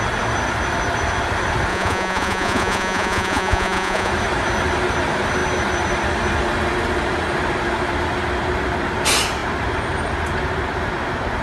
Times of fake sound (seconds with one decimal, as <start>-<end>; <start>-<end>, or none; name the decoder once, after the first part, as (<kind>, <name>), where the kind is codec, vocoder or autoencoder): 1.7-4.1 (vocoder, Vocos)